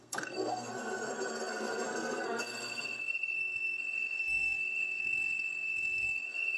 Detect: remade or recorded remade